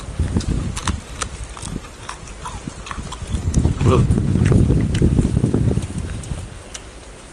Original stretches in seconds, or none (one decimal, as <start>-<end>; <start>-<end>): 0.0-3.4; 4.4-7.3